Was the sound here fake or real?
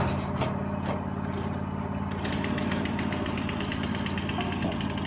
real